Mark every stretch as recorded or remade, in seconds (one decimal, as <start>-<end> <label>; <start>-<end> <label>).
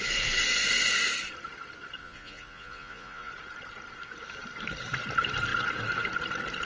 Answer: 0.0-2.0 recorded; 2.0-3.3 remade; 3.3-6.6 recorded